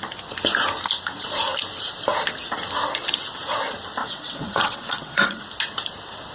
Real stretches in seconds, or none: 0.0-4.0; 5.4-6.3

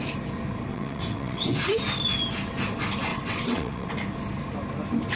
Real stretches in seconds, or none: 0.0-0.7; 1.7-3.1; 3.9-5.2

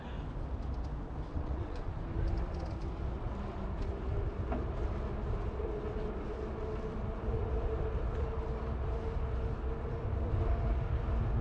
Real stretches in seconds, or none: 0.0-1.3; 1.9-11.4

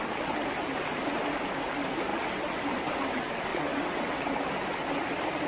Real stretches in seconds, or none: 0.0-3.5; 4.3-5.5